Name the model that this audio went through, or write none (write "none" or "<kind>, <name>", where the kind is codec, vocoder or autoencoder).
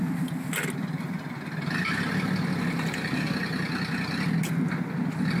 none